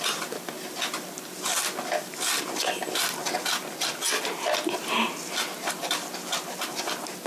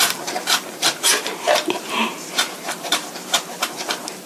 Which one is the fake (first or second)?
second